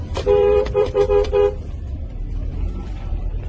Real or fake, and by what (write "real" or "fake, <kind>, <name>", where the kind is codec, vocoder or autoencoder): fake, vocoder, BigVGAN v2